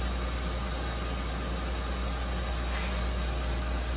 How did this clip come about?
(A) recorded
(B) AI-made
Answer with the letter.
A